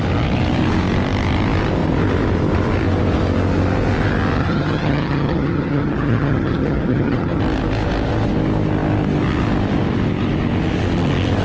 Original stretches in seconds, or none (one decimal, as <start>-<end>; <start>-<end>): 0.0-4.4; 7.4-11.4